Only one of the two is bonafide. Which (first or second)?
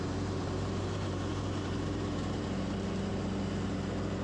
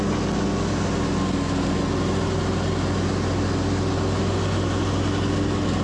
second